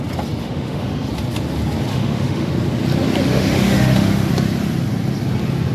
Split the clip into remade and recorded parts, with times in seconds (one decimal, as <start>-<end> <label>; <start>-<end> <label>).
0.0-0.4 recorded; 0.4-1.1 remade; 1.1-1.9 recorded; 1.9-2.5 remade; 2.5-3.2 recorded; 3.2-4.3 remade; 4.3-5.7 recorded